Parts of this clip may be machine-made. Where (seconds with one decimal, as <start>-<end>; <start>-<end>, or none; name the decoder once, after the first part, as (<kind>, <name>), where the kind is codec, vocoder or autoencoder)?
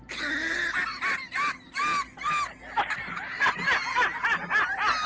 none